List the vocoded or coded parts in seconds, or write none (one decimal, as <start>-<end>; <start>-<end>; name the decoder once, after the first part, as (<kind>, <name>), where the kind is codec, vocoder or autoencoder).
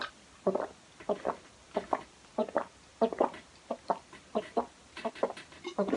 none